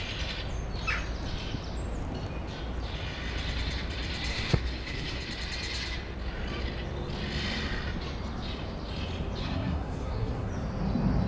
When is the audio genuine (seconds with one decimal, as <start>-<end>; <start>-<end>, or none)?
0.0-4.3; 5.2-9.4; 10.5-11.3